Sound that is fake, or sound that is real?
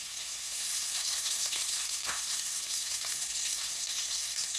fake